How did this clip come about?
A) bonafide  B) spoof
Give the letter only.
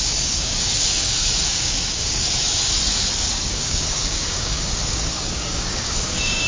B